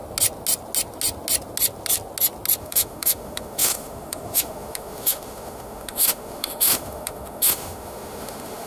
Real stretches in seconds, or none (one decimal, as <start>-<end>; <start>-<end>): 0.0-2.6